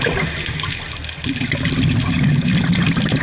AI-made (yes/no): no